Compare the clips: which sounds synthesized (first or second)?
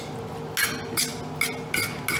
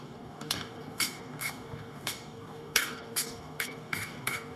second